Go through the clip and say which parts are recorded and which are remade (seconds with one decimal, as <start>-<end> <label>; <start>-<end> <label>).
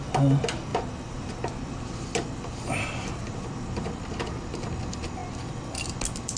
0.0-0.7 recorded; 0.7-3.5 remade; 3.5-6.4 recorded